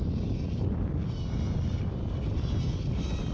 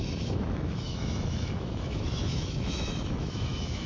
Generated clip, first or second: second